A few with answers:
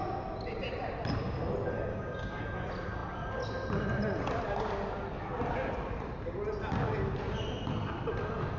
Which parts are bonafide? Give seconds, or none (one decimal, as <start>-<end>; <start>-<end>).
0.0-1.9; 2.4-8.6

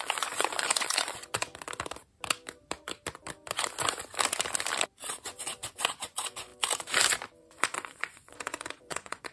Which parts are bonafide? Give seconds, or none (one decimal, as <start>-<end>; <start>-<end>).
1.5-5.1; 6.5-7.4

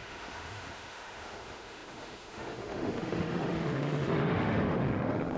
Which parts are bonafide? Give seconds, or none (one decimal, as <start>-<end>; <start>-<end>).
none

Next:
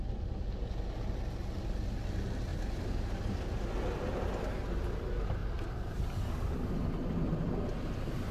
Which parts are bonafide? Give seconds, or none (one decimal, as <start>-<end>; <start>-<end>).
0.0-2.5; 3.7-5.4; 6.3-8.3

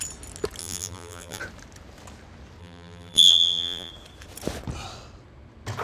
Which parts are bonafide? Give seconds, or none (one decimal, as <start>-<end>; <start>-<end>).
0.0-0.6; 1.4-2.6; 3.9-5.8